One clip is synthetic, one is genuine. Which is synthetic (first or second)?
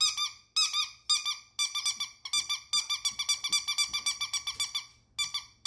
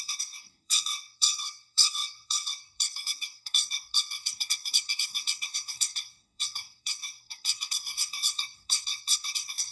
second